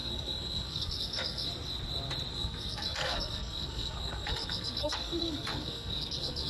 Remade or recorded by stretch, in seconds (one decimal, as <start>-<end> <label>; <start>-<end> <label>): 0.0-1.5 remade; 1.5-2.3 recorded; 2.3-6.5 remade